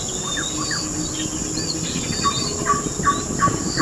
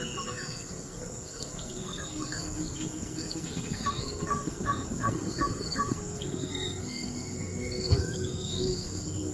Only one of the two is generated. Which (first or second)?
second